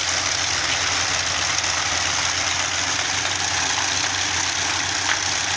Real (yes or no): yes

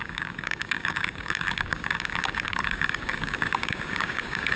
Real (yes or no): no